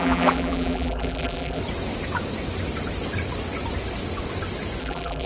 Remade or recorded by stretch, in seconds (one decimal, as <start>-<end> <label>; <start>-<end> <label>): 0.0-1.6 remade; 1.6-4.8 recorded; 4.8-5.3 remade